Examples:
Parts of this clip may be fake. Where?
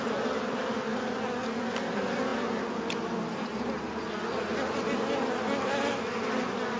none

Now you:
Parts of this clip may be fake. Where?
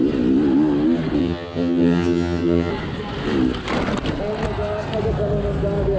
1.2-2.7 (vocoder, HiFi-GAN)